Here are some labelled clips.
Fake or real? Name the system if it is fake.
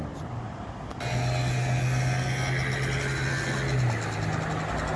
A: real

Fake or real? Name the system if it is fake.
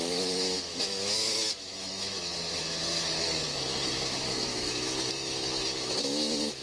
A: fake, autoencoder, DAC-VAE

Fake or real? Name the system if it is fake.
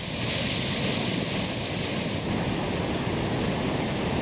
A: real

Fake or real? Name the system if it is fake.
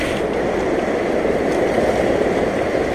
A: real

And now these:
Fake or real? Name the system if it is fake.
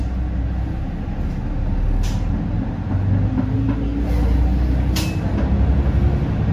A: real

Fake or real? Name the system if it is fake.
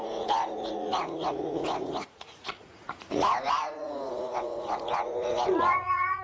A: fake, vocoder, Vocos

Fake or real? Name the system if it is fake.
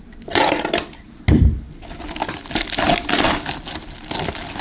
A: real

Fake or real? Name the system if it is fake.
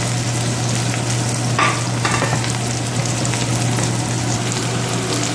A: real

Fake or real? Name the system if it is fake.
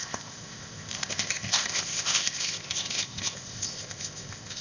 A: fake, codec, ZipCodec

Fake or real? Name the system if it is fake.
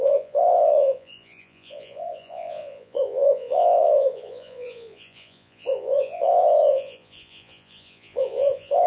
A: fake, vocoder, Vocos